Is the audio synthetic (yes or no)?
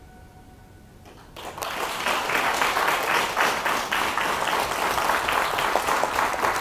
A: no